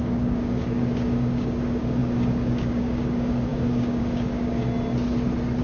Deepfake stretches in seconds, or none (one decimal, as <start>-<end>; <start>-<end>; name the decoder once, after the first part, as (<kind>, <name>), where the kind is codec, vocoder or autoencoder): 0.0-4.6 (codec, DAC)